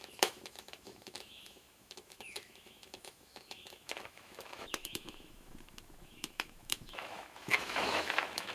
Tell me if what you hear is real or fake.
fake